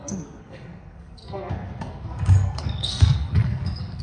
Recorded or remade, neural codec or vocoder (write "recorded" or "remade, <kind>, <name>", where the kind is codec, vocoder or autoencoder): remade, codec, SNAC